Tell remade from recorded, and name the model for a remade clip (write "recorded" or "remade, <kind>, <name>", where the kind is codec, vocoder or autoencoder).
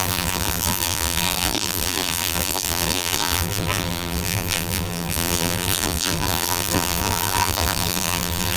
remade, vocoder, BigVGAN v2